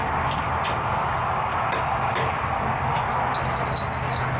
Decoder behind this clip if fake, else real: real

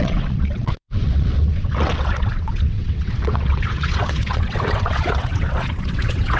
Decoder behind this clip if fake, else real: fake, vocoder, WaveNeXt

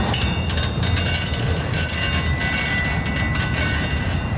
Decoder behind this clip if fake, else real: real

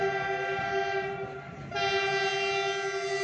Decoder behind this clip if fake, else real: real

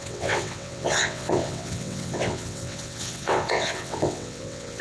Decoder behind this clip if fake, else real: fake, vocoder, WaveNeXt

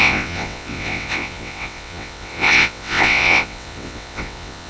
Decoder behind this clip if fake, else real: fake, vocoder, WaveNeXt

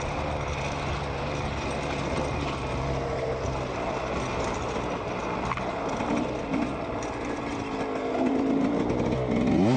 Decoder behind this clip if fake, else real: real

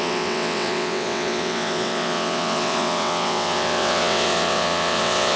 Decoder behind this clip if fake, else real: fake, vocoder, WaveNeXt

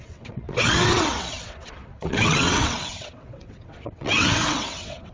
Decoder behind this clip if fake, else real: fake, vocoder, WaveNeXt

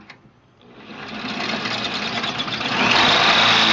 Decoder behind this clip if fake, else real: real